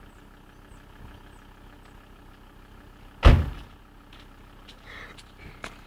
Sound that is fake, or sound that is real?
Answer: real